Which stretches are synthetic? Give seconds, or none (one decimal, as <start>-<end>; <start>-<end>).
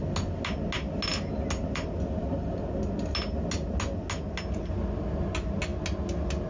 none